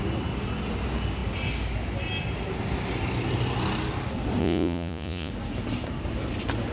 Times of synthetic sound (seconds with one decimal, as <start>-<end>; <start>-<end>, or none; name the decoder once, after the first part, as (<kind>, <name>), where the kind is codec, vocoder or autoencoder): 4.4-5.3 (vocoder, Vocos)